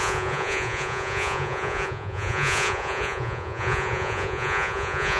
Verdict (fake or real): fake